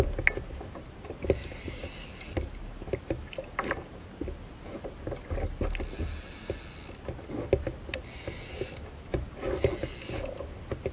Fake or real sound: real